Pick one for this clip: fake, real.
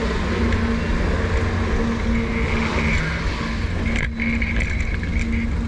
real